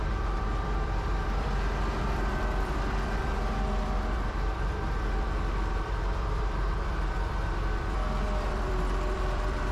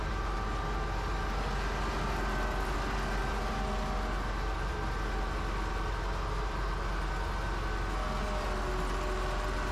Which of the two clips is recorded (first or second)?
second